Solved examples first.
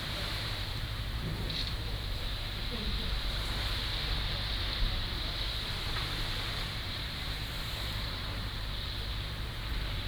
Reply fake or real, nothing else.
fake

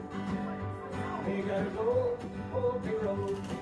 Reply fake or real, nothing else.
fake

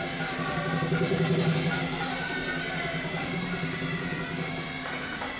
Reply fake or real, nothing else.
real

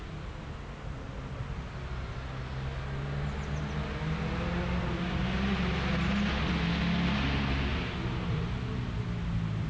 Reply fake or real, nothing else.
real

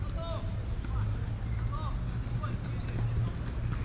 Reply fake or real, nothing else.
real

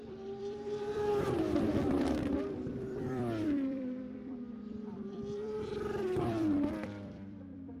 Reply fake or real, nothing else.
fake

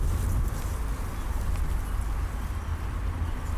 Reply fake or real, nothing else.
real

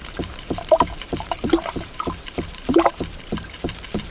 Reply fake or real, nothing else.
fake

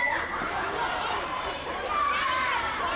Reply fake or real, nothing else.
fake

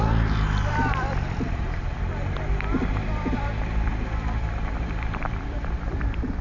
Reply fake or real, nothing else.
fake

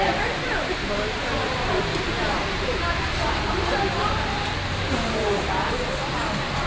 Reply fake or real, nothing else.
fake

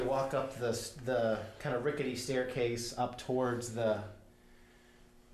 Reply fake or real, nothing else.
real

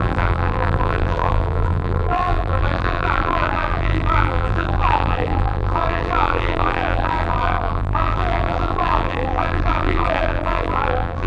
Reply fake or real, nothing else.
fake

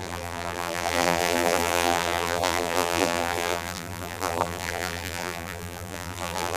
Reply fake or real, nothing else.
fake